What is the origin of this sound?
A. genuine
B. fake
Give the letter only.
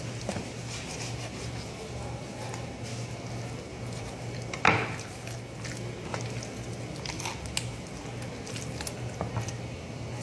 A